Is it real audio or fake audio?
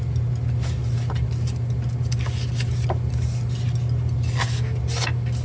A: real